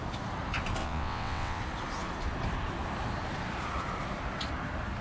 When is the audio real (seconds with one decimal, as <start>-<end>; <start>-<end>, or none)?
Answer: 0.0-0.8; 1.6-5.0